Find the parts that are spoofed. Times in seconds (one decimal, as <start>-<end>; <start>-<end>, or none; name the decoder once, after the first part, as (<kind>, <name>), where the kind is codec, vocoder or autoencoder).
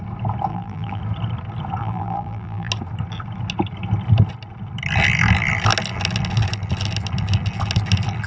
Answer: 0.5-1.0 (vocoder, BigVGAN v2); 1.8-2.7